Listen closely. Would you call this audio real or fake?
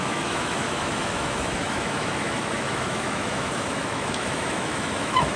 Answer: fake